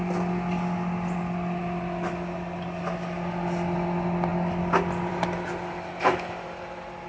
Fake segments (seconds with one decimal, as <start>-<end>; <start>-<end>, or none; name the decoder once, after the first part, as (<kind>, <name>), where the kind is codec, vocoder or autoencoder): none